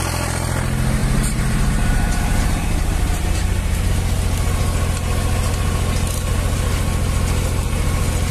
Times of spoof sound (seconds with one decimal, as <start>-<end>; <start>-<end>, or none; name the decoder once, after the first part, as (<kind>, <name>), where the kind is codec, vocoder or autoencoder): 1.0-3.9 (vocoder, BigVGAN v2)